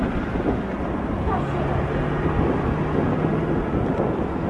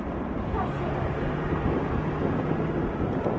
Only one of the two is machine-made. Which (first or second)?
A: second